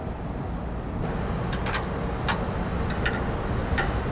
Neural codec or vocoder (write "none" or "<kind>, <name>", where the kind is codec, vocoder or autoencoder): none